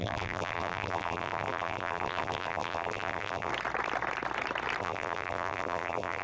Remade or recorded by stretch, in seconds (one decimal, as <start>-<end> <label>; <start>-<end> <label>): 0.0-3.5 remade; 3.5-4.8 recorded; 4.8-6.2 remade